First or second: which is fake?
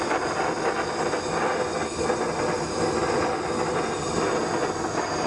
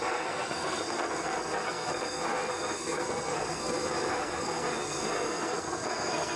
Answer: second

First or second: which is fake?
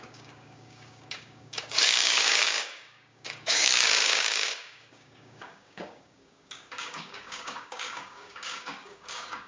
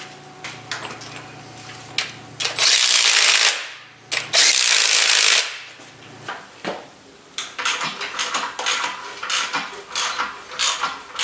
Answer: first